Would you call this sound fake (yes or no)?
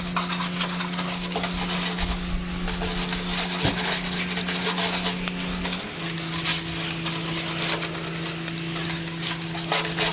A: no